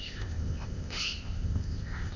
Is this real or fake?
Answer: fake